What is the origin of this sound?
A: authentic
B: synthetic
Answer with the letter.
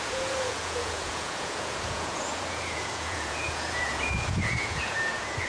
B